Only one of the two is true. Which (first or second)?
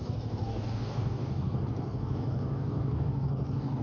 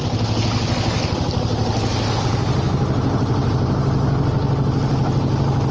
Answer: second